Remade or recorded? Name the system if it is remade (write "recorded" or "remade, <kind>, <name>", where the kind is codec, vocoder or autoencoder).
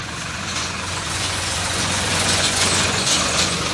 remade, vocoder, Vocos